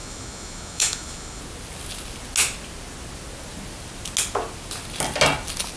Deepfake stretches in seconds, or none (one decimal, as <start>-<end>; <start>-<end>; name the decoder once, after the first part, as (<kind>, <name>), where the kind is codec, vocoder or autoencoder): 0.0-1.4 (autoencoder, DAC-VAE)